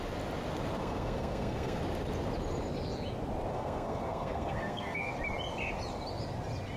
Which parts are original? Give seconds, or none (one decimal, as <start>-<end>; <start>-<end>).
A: 0.0-0.8; 1.8-3.5; 5.1-6.8